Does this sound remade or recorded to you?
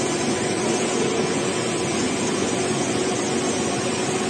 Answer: remade